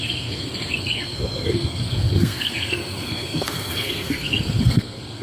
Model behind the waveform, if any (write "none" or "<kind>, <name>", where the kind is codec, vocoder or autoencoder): codec, SNAC